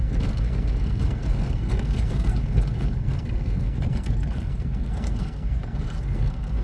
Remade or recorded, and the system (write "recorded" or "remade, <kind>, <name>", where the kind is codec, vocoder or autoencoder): remade, codec, SNAC